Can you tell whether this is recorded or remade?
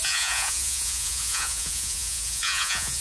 remade